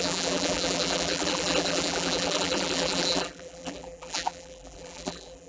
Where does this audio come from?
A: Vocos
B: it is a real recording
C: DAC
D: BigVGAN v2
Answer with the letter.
D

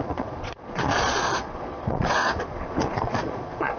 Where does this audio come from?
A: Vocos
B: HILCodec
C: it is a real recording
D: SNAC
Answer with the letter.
A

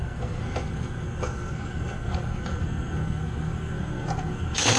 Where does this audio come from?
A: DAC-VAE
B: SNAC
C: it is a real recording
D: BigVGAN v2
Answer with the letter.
B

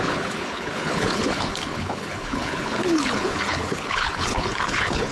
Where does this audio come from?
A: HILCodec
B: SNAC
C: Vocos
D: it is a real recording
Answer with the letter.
A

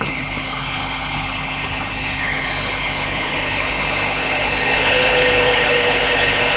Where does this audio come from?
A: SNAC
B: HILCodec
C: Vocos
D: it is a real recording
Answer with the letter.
B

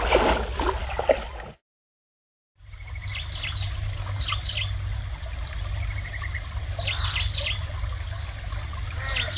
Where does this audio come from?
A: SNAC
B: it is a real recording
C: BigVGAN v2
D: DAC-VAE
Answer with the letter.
B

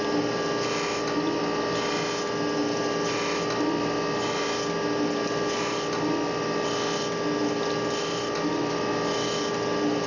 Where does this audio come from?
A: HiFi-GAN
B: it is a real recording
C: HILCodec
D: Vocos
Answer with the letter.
B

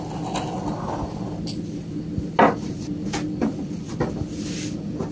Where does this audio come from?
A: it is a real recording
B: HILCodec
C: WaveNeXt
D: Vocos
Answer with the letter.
A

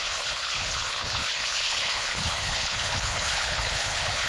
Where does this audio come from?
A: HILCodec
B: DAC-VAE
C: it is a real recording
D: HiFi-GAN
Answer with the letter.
A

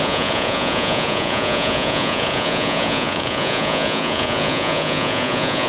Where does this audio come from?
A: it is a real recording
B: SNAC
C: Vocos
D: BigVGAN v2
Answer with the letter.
C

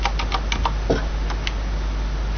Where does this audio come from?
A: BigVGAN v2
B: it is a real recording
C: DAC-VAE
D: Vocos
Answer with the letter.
B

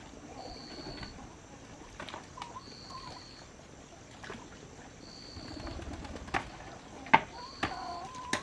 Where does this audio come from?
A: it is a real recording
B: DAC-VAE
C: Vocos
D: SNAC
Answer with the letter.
A